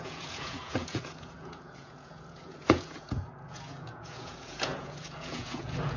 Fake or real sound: fake